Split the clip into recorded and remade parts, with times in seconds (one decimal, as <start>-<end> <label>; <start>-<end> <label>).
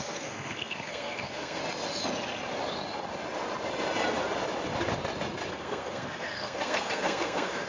0.0-1.6 remade; 1.6-5.5 recorded; 5.5-7.7 remade